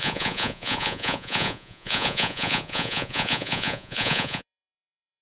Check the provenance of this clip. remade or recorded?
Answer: remade